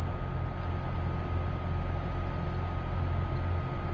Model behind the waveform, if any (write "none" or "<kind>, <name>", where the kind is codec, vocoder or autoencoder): none